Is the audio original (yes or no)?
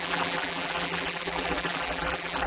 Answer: no